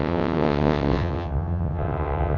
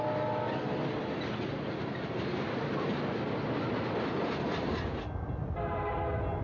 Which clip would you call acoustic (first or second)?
second